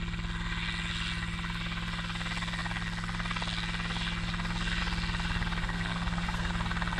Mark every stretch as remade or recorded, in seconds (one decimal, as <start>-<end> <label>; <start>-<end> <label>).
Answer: 0.0-5.6 recorded; 5.6-6.5 remade; 6.5-7.0 recorded